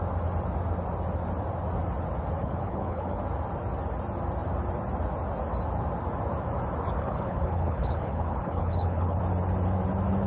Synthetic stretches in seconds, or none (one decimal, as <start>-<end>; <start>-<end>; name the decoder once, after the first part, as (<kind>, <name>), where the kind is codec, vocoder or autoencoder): 2.4-3.2 (codec, HILCodec); 7.0-9.2